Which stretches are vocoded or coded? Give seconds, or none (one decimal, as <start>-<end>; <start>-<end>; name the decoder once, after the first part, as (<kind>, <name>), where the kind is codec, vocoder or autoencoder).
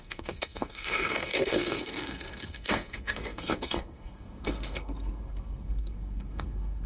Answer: 0.0-6.9 (codec, SNAC)